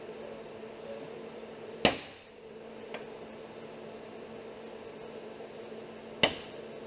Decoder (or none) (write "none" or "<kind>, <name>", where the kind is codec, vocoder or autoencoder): none